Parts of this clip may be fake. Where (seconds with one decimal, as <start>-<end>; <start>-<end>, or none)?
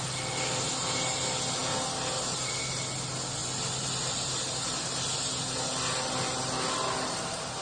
none